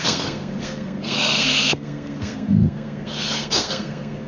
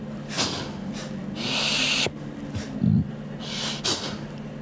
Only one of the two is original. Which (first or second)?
second